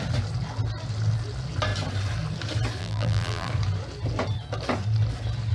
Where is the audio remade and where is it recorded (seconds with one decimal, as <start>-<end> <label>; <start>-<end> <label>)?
0.0-2.8 recorded; 2.8-3.5 remade; 3.5-5.5 recorded